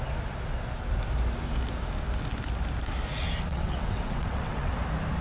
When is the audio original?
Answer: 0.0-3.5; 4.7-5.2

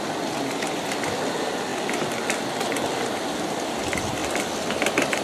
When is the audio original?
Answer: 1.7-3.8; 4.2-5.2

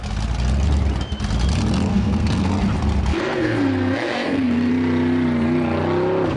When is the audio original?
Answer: 0.0-1.9; 2.5-3.1; 4.7-6.4

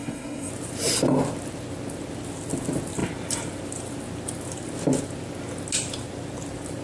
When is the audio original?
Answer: 0.5-6.8

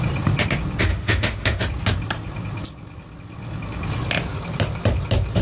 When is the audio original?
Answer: 0.0-0.9; 1.6-5.4

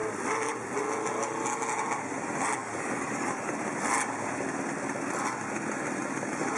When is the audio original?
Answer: 0.0-2.6; 3.5-6.6

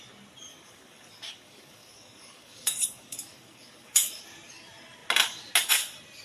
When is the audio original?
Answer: 0.0-0.5; 4.2-6.2